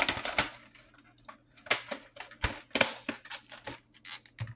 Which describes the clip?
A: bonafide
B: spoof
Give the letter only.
A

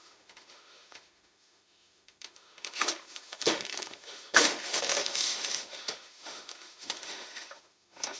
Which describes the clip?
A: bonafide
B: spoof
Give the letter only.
B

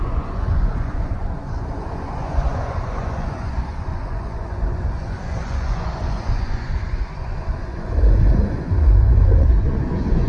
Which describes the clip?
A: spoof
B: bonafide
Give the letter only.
A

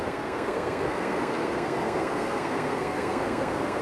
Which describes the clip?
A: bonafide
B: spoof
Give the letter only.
B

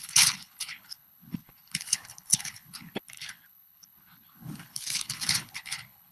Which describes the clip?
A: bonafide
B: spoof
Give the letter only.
B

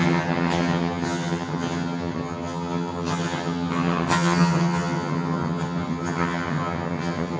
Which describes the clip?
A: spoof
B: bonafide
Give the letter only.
A